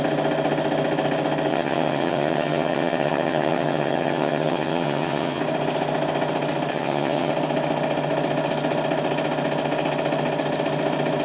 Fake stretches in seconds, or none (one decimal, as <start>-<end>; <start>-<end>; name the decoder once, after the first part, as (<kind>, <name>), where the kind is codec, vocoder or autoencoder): 1.5-5.4 (vocoder, HiFi-GAN); 6.7-7.3